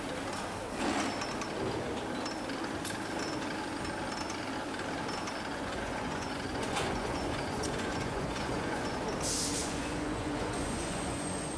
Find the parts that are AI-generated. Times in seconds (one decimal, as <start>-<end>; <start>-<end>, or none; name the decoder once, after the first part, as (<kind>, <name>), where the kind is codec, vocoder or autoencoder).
5.5-9.0 (vocoder, Vocos); 9.6-11.6